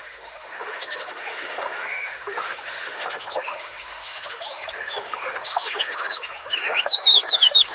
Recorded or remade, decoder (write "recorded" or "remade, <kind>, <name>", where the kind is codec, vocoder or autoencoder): remade, autoencoder, DAC-VAE